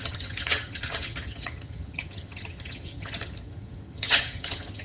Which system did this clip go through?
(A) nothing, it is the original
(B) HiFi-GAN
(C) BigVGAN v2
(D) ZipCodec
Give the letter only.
B